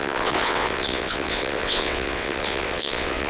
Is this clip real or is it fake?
fake